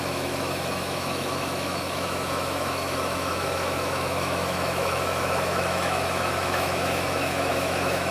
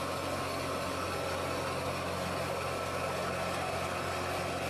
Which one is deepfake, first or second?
first